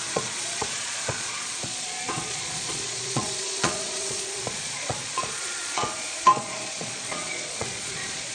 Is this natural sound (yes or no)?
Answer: no